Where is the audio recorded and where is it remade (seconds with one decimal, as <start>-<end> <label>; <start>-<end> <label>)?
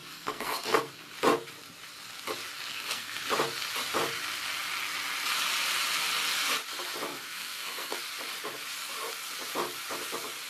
0.0-1.1 remade; 1.1-2.7 recorded; 2.7-3.2 remade; 3.2-7.1 recorded; 7.1-8.0 remade; 8.0-10.5 recorded